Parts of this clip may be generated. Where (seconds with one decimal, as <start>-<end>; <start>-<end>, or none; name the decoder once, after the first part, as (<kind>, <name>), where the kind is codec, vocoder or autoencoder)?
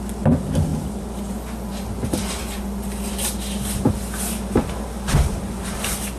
none